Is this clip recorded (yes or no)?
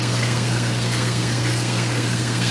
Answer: no